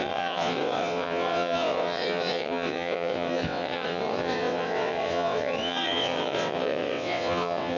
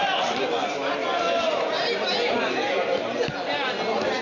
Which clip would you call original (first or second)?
second